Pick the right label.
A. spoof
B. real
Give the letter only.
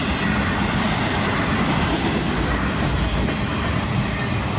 B